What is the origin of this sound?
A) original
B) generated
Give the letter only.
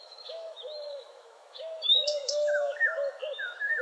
B